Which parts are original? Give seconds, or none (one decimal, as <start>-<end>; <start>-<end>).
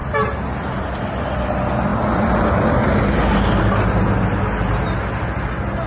0.0-5.9